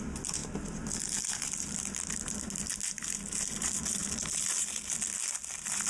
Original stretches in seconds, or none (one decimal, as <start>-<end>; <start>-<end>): 0.0-5.9